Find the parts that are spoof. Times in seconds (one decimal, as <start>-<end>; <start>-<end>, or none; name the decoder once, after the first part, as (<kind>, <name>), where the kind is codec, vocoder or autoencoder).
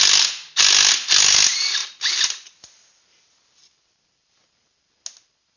1.8-4.4 (vocoder, BigVGAN v2)